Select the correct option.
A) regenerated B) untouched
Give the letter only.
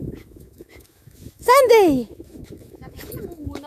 A